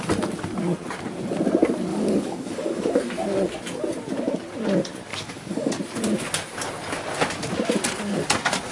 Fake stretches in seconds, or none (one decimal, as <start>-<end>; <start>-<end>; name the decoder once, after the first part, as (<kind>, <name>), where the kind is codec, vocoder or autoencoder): 1.9-3.0 (codec, DAC); 5.1-5.7